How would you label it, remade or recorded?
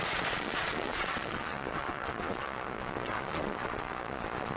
remade